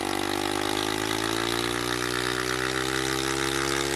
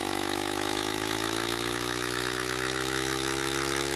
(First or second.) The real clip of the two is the first